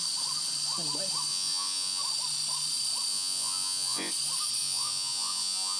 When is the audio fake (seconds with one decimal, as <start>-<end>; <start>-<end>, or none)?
1.3-2.0; 3.1-4.1; 4.6-5.8